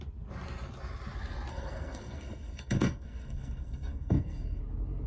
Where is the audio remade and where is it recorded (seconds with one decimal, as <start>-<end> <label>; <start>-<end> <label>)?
0.0-1.5 recorded; 1.5-4.6 remade; 4.6-5.1 recorded